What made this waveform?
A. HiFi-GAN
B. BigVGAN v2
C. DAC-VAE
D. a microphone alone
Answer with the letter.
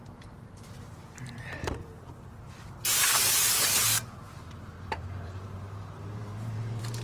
B